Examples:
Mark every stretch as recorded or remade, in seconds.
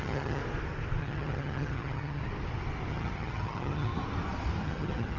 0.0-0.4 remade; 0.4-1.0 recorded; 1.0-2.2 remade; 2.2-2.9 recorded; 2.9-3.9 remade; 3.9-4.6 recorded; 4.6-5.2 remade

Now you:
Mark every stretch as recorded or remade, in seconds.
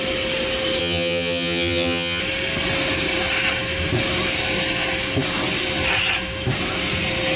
0.0-0.8 recorded; 0.8-2.2 remade; 2.2-7.4 recorded